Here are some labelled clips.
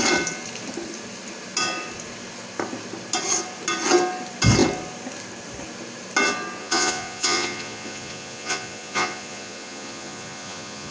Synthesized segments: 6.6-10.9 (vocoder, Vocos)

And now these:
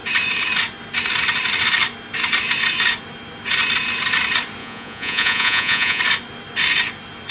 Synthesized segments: 4.6-6.0 (vocoder, Vocos)

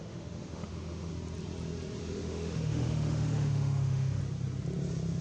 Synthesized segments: 0.0-1.1 (autoencoder, DAC-VAE); 2.0-4.2

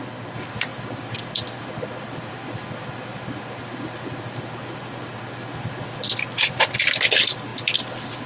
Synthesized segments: none

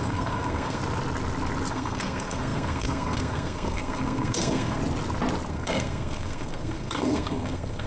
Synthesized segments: 0.0-0.8 (codec, SNAC); 1.7-4.8; 5.5-7.9

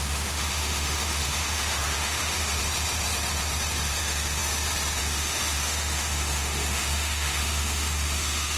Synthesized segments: 0.0-2.6 (autoencoder, DAC-VAE); 4.0-4.4; 5.0-8.6

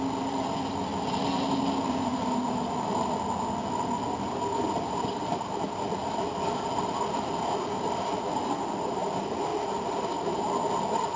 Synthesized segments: 2.1-3.0 (vocoder, BigVGAN v2)

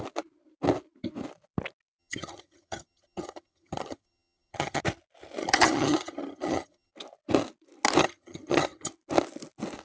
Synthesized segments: 2.0-4.8 (vocoder, HiFi-GAN); 5.4-6.9; 8.0-8.9